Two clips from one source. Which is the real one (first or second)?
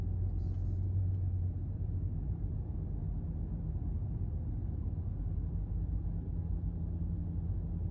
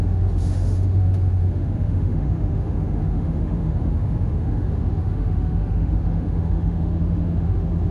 first